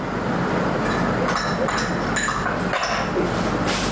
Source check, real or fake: real